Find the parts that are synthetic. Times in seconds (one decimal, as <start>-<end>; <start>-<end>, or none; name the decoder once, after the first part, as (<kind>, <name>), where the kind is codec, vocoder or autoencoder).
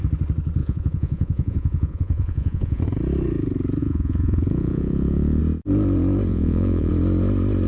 0.6-2.8 (vocoder, Vocos); 3.8-5.4; 6.3-6.9